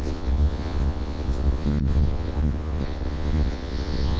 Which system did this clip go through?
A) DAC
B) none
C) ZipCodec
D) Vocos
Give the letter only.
D